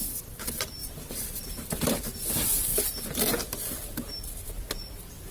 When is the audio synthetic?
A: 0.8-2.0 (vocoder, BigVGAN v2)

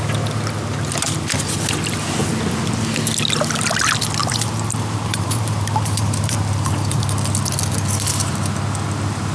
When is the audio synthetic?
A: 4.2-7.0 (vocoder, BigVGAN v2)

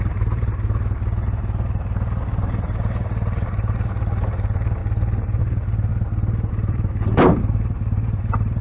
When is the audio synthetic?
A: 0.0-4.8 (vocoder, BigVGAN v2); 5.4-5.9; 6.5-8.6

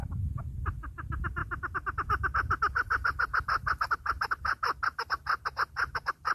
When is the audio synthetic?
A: 0.0-0.6 (vocoder, BigVGAN v2)